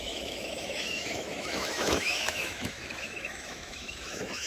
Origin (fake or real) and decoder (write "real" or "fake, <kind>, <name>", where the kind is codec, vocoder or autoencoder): fake, autoencoder, DAC-VAE